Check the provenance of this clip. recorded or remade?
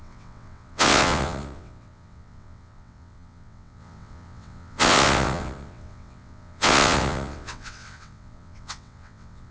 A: remade